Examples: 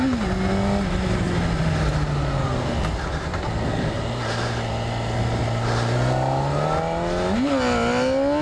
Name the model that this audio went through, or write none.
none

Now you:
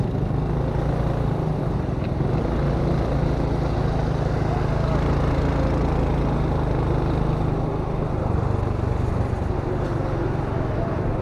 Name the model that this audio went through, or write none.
none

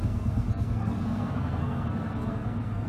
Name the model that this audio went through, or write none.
codec, SNAC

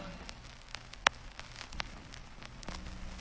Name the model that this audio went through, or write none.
none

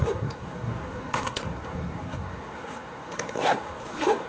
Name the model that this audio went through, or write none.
codec, SNAC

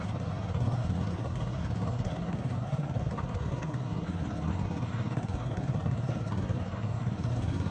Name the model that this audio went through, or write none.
codec, SNAC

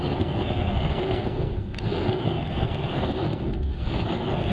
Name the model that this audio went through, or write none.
codec, SNAC